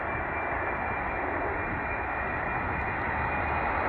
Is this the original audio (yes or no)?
yes